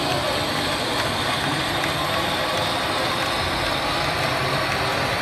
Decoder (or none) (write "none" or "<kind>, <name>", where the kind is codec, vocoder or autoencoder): none